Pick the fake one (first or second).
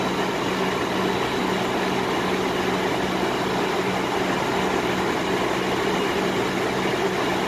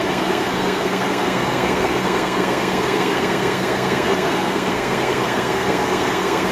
second